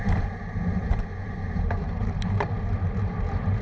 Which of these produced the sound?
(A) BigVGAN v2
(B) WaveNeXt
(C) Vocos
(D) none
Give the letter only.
A